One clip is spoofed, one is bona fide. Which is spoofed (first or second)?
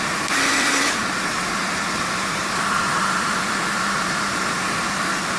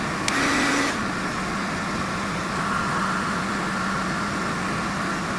first